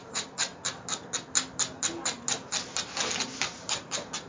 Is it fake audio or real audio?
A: real